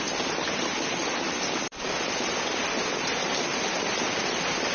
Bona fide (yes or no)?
yes